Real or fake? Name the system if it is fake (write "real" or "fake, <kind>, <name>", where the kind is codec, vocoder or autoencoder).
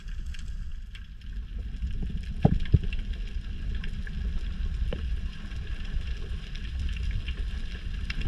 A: real